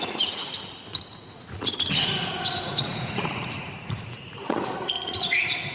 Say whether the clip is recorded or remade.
remade